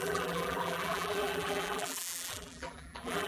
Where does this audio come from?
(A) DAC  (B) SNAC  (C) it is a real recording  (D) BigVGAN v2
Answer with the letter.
D